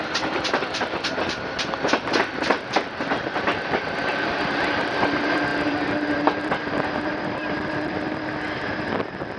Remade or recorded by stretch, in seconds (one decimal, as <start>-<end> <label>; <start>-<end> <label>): 0.0-9.4 remade